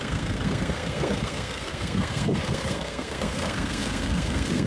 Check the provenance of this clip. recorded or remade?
remade